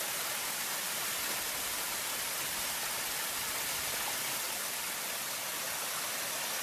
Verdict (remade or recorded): recorded